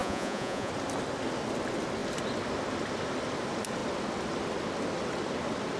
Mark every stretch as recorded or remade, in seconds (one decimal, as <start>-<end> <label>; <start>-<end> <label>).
0.0-0.7 remade; 0.7-5.8 recorded